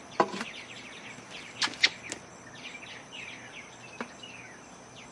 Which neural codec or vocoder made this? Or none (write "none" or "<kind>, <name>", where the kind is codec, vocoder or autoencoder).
none